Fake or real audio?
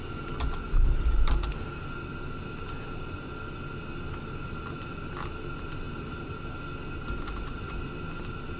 real